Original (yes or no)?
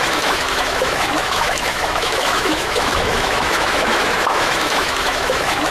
no